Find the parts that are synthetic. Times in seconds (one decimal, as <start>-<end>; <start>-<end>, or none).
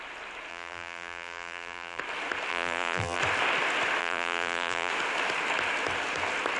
0.5-2.0; 2.5-3.2; 4.0-4.9